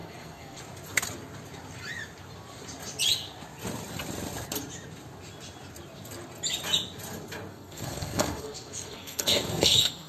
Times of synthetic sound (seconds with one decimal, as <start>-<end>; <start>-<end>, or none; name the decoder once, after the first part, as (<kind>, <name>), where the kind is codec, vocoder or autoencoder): 0.0-0.6 (codec, SNAC); 7.5-10.1